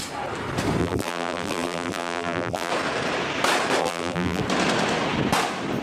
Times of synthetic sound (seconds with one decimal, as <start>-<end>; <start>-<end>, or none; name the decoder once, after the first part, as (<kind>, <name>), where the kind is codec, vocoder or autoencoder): 0.8-2.7 (vocoder, BigVGAN v2); 3.8-4.4